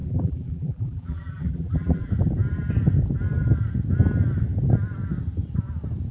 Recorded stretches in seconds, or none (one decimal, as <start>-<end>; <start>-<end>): 2.1-6.1